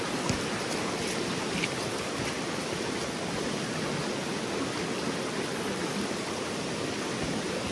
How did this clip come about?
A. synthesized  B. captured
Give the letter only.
B